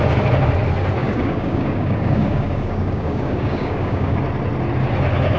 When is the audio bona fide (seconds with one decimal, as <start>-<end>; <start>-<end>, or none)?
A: 0.0-1.0; 4.2-5.4